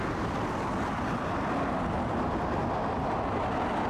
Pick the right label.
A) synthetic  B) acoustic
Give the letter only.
B